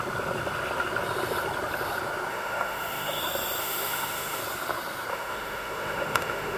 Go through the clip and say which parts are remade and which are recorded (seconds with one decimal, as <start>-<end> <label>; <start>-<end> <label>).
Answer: 0.0-2.3 recorded; 2.3-3.2 remade; 3.2-3.6 recorded; 3.6-4.4 remade; 4.4-5.1 recorded; 5.1-6.6 remade